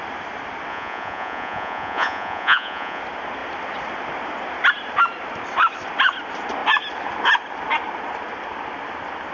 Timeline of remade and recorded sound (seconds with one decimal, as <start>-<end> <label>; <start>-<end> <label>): 0.0-0.7 recorded; 0.7-3.0 remade; 3.0-9.3 recorded